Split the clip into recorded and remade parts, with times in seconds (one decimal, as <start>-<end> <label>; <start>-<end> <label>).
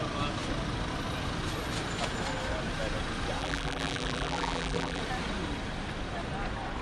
0.0-3.4 recorded; 3.4-5.0 remade; 5.0-6.8 recorded